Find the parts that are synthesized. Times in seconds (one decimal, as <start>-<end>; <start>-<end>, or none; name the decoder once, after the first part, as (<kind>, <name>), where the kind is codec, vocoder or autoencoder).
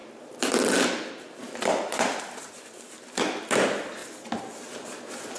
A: 0.0-2.9 (vocoder, BigVGAN v2); 4.0-4.5